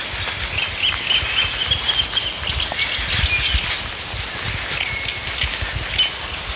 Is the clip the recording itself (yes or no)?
yes